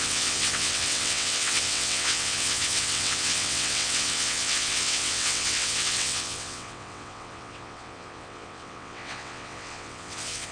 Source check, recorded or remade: remade